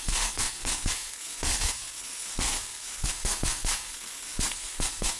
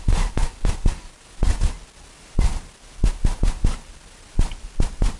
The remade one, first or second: first